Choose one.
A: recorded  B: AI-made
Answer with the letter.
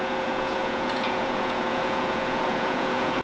B